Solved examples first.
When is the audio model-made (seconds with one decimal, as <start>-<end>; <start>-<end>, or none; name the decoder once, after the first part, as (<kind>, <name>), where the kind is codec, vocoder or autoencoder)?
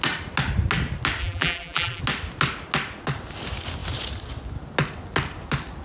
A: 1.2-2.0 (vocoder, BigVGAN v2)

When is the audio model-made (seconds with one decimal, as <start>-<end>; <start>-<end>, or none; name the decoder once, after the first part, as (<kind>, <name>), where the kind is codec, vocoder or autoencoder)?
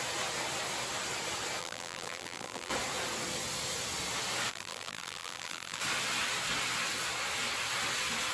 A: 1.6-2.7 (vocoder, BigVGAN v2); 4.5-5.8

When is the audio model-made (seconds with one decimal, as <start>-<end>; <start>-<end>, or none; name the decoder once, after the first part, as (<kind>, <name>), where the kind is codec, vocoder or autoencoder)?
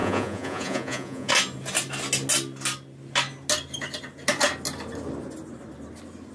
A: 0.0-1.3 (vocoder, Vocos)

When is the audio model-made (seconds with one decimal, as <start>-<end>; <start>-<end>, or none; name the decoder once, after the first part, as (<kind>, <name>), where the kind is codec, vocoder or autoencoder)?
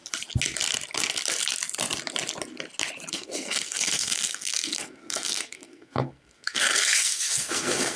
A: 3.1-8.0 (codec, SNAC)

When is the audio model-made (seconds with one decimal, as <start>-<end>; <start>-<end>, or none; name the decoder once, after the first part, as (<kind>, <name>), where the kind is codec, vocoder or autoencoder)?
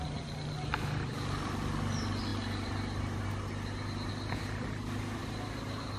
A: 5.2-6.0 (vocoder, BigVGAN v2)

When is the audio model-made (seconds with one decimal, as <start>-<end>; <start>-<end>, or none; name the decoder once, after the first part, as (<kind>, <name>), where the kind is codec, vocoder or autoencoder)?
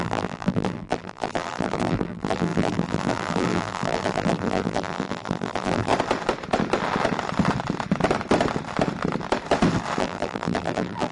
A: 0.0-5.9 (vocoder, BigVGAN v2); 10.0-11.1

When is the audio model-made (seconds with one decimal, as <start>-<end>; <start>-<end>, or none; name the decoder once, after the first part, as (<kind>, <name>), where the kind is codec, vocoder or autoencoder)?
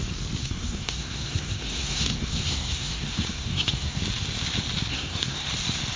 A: 0.4-4.0 (codec, SNAC); 4.9-5.5